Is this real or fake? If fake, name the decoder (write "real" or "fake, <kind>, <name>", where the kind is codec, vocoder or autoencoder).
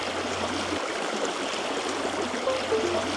real